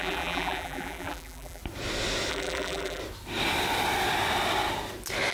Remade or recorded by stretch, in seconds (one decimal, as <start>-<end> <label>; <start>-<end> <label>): 0.0-1.6 remade; 1.6-2.3 recorded; 2.3-3.0 remade; 3.0-5.3 recorded